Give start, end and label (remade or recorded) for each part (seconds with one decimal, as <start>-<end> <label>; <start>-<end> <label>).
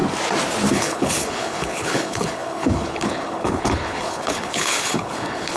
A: 0.0-0.7 recorded; 0.7-5.6 remade